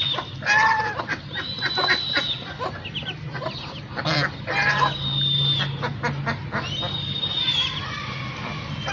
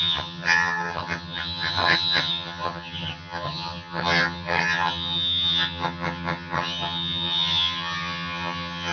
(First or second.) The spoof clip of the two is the second